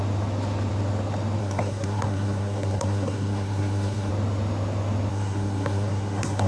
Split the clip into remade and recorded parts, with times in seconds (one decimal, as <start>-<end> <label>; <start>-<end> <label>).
0.0-1.4 recorded; 1.4-4.1 remade; 4.1-5.1 recorded; 5.1-6.5 remade